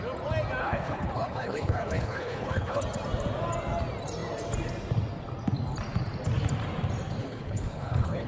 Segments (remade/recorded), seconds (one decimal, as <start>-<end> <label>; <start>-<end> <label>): 0.0-0.6 recorded; 0.6-2.8 remade; 2.8-7.2 recorded; 7.2-8.3 remade